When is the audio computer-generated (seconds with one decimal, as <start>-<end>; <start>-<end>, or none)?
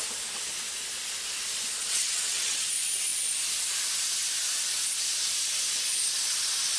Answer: 1.8-2.7